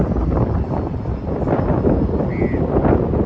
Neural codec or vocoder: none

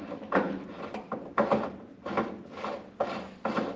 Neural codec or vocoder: none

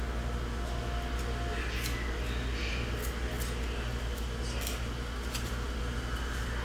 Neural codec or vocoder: none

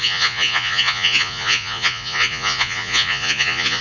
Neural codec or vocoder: vocoder, Vocos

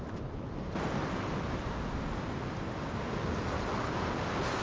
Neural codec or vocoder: none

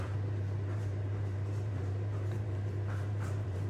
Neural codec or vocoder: vocoder, BigVGAN v2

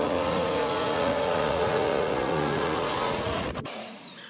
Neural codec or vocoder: vocoder, Vocos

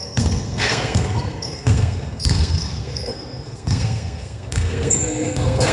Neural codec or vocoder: codec, SNAC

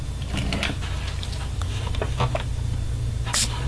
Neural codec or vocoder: none